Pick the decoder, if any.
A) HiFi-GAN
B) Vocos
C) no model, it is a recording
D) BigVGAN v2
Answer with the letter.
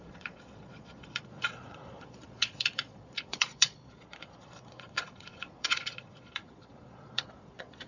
B